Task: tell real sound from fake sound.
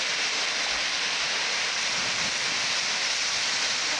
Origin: fake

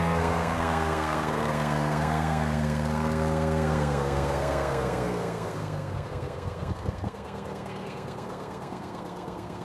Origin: fake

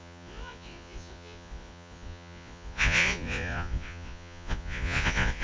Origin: fake